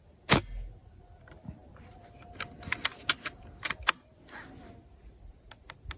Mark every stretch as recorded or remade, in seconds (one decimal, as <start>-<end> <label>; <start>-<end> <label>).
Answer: 0.0-6.0 recorded